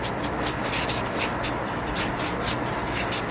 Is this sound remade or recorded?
recorded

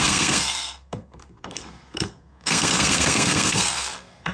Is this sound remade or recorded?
remade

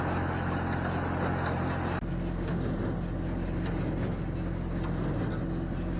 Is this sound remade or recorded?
recorded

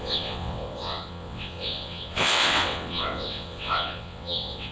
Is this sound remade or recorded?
remade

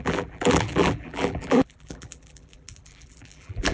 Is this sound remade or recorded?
remade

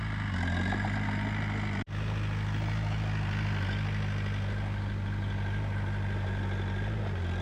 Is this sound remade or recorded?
recorded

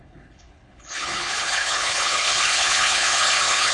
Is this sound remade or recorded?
remade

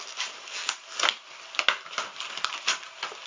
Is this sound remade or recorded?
recorded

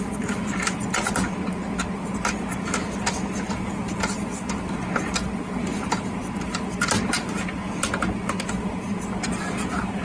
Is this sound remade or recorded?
recorded